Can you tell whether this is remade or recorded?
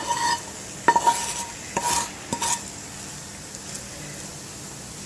recorded